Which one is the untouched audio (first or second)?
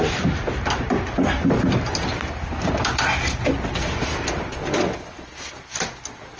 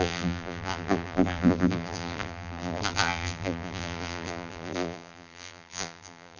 first